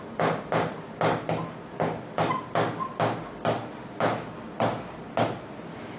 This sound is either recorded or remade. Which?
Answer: recorded